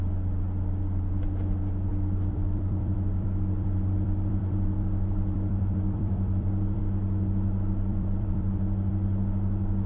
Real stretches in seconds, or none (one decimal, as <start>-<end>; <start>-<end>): 0.0-1.9; 6.8-7.9; 8.9-9.9